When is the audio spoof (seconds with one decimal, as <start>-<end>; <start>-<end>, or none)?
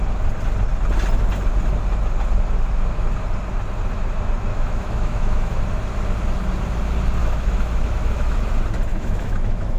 4.5-5.6; 7.2-8.4; 8.9-9.8